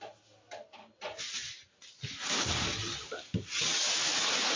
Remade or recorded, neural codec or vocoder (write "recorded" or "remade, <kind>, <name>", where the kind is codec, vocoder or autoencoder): recorded